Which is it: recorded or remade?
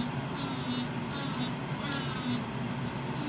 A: recorded